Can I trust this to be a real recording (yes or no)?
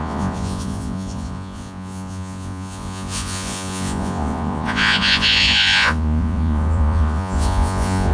no